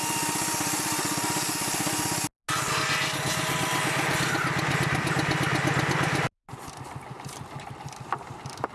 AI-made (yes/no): no